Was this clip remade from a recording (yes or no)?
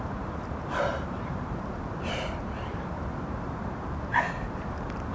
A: yes